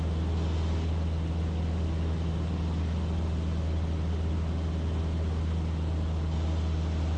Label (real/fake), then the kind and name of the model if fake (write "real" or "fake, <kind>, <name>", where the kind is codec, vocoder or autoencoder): real